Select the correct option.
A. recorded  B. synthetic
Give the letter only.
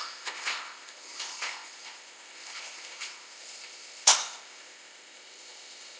B